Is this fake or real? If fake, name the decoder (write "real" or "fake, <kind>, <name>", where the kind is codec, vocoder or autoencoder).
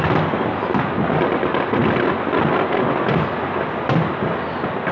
real